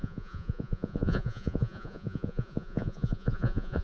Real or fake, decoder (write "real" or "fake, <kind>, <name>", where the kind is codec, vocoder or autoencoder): fake, vocoder, Vocos